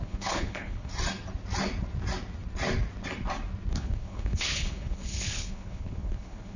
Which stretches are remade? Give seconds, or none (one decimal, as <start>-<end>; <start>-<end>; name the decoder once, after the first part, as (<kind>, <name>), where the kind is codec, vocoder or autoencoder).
0.0-0.9 (codec, HILCodec); 3.7-6.6